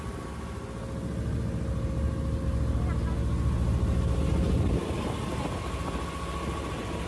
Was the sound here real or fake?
real